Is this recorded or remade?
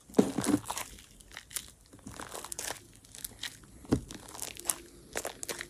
recorded